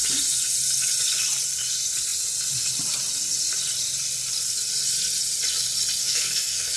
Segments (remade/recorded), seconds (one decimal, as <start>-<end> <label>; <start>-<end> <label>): 0.0-6.0 recorded; 6.0-6.8 remade